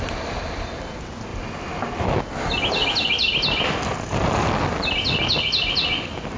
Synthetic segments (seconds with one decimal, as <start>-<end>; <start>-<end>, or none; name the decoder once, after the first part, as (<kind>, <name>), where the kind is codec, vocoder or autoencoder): none